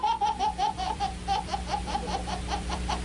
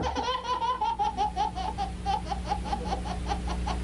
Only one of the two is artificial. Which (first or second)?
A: first